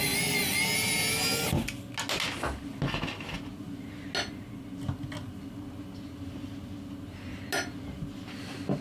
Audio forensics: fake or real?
real